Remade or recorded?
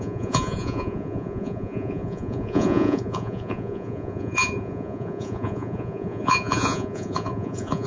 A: remade